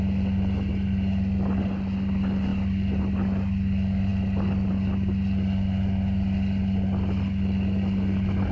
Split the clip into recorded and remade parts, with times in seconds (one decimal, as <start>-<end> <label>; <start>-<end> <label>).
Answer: 0.0-8.5 recorded